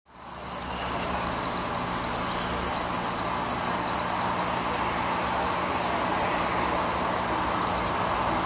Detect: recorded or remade recorded